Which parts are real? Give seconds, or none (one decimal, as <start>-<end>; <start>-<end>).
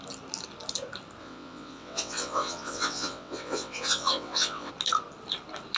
0.0-1.2; 4.7-5.8